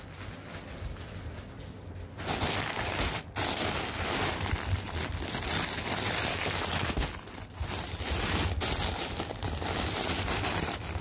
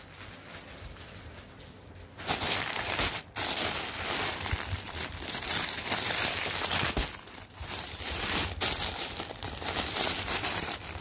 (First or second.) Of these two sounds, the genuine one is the first